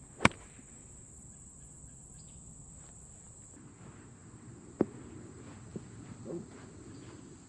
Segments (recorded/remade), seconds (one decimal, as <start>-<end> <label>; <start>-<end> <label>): 0.0-7.5 recorded